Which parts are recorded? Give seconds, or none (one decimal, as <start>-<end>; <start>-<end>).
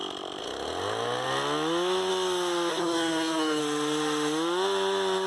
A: 0.0-2.7; 3.6-5.3